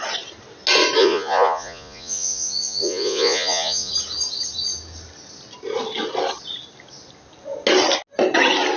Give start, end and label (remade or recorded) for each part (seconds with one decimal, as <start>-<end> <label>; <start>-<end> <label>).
0.0-1.0 recorded; 1.0-3.9 remade; 3.9-8.8 recorded